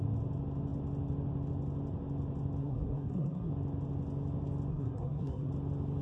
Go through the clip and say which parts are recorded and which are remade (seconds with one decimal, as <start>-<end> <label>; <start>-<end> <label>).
0.0-2.6 recorded; 2.6-3.5 remade; 3.5-4.7 recorded; 4.7-5.5 remade; 5.5-6.0 recorded